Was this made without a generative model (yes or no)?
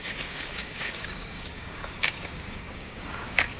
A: no